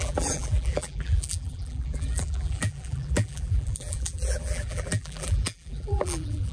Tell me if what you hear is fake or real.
fake